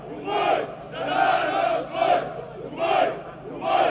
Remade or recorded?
recorded